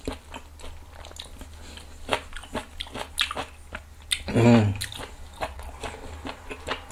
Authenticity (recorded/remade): recorded